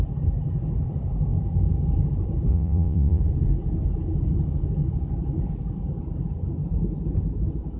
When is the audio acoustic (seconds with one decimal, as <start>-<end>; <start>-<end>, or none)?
0.0-2.5; 3.2-7.8